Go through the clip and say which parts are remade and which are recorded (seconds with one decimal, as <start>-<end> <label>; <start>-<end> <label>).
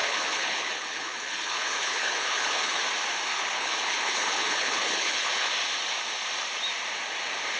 0.0-2.8 remade; 2.8-3.3 recorded; 3.3-5.5 remade; 5.5-7.6 recorded